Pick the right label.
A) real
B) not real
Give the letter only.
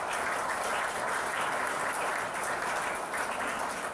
A